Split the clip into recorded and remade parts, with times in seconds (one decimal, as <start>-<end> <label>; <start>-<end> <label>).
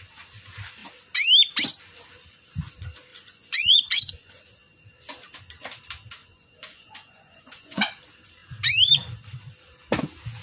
0.0-3.1 recorded; 3.1-4.4 remade; 4.4-6.2 recorded; 6.2-7.9 remade; 7.9-10.4 recorded